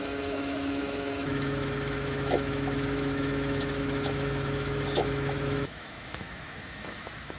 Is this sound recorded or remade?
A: remade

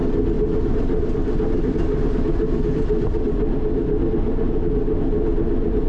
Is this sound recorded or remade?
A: recorded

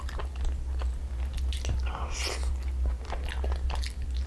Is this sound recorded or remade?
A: recorded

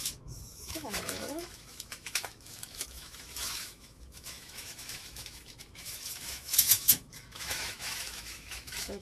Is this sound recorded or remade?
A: remade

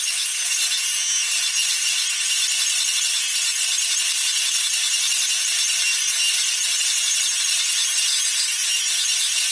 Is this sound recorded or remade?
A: recorded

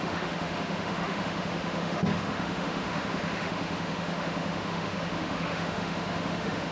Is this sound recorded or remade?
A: remade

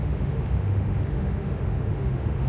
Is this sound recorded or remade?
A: remade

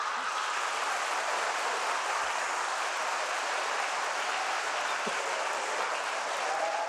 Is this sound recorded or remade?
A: recorded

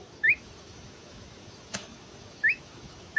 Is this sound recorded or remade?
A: remade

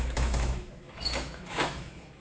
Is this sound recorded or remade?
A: remade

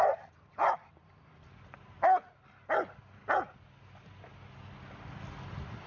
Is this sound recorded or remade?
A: recorded